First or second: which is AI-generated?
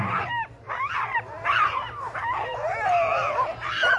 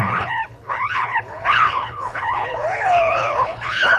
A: second